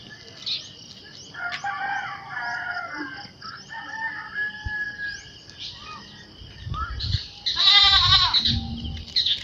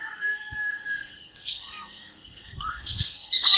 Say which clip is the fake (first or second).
second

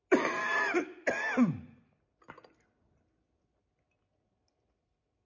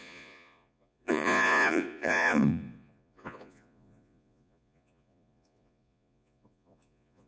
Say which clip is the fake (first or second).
second